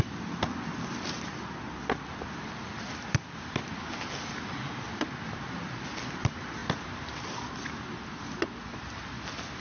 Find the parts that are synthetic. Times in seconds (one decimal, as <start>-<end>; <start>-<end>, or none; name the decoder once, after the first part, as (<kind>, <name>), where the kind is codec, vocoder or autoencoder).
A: 0.0-9.6 (vocoder, BigVGAN v2)